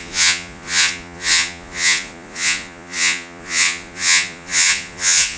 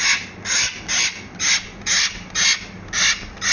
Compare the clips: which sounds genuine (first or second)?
second